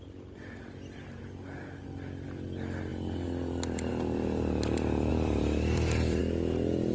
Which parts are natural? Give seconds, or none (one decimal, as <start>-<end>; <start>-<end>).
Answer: 0.0-5.1; 6.2-6.9